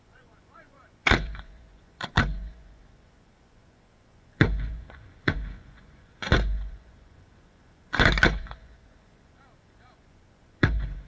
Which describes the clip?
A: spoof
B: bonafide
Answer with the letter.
A